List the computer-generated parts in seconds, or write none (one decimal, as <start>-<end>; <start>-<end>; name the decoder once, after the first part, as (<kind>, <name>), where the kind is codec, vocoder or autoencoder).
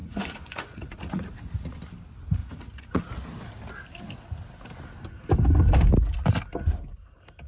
0.0-1.4 (vocoder, Vocos); 2.4-3.0